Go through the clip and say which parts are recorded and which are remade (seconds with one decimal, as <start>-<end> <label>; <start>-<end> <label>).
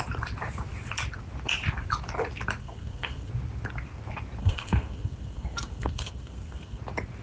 0.0-2.6 recorded; 2.6-3.3 remade; 3.3-4.4 recorded; 4.4-6.8 remade; 6.8-7.2 recorded